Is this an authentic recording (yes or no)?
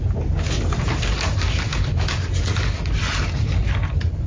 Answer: yes